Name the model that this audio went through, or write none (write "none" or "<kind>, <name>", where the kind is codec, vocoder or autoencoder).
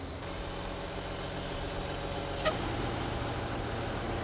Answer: none